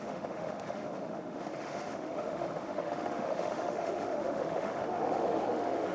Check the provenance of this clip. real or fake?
fake